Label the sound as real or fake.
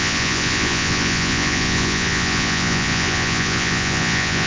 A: fake